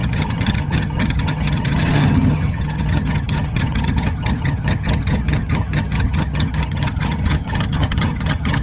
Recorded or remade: remade